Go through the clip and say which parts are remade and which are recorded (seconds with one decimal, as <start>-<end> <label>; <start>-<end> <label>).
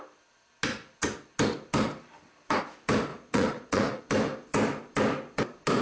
0.0-3.1 recorded; 3.1-4.0 remade; 4.0-5.8 recorded